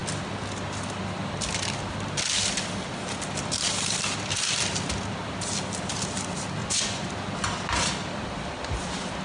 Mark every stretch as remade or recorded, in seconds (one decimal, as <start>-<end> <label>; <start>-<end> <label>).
0.0-6.6 recorded; 6.6-7.1 remade; 7.1-9.2 recorded